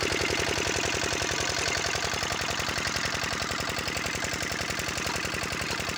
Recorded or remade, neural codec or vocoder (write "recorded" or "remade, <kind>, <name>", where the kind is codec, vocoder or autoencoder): recorded